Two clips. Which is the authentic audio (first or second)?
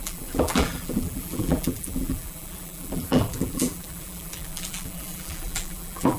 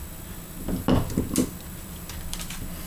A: second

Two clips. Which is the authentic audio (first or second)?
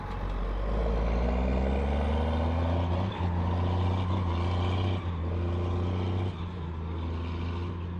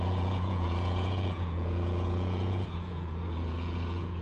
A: first